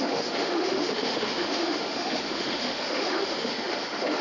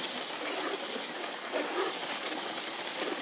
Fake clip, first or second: first